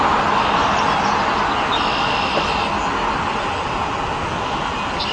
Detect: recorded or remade recorded